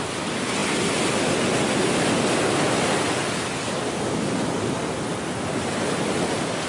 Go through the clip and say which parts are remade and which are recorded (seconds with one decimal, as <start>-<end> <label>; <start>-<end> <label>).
0.0-6.7 recorded